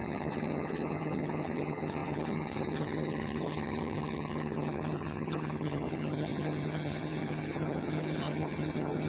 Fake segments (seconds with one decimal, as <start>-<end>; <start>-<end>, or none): 0.0-9.1